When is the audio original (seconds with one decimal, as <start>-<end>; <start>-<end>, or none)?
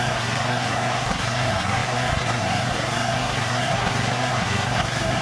none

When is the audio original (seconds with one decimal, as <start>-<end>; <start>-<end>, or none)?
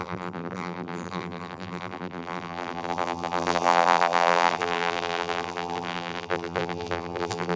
none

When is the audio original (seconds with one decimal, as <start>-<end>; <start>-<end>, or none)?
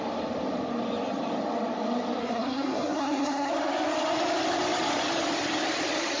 0.0-2.2; 3.5-6.2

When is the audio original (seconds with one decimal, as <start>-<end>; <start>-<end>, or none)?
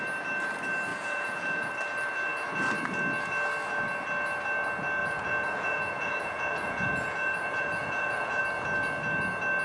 0.0-0.9; 1.7-5.0; 8.4-9.6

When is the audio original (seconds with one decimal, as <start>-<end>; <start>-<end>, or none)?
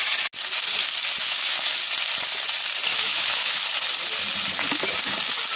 0.0-1.2; 1.8-2.9; 3.6-5.6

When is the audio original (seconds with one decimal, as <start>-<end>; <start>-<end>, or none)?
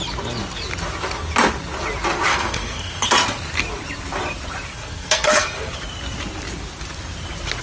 0.0-2.3; 3.1-4.7; 5.7-7.6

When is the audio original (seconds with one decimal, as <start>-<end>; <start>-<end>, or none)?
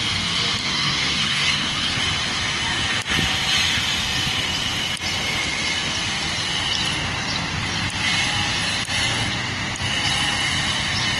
0.0-0.6; 2.0-11.2